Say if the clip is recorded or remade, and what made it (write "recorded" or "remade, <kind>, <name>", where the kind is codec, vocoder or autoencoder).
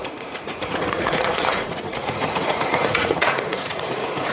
remade, vocoder, Vocos